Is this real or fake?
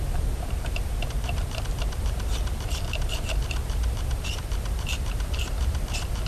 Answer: fake